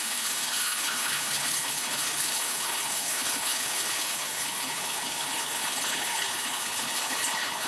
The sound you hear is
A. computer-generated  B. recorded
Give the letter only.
A